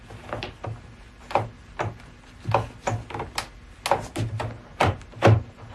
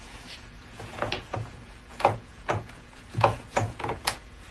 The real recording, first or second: first